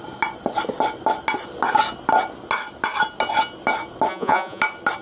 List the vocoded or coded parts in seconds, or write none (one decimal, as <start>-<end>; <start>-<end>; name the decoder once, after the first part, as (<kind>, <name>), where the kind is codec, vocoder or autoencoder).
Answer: 4.1-4.6 (vocoder, Vocos)